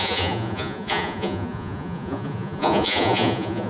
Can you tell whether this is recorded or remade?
remade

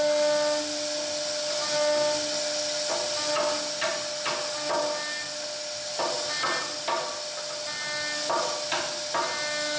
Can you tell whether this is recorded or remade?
recorded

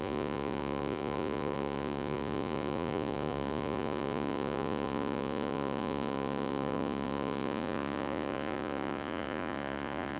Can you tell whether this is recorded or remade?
remade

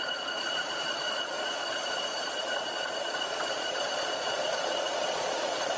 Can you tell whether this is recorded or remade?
remade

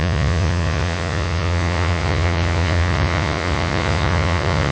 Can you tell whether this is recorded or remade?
remade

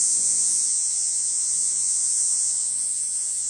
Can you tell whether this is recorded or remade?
remade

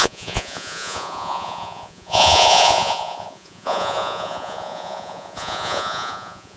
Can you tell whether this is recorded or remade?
remade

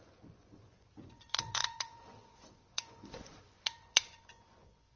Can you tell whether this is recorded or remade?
remade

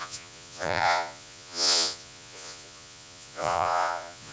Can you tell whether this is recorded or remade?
remade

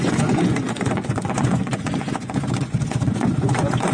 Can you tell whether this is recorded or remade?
remade